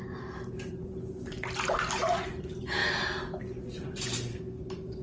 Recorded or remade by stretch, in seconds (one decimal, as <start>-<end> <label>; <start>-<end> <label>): 0.0-4.3 recorded; 4.3-5.0 remade